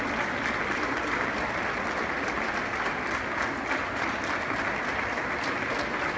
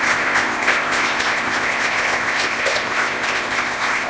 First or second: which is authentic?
first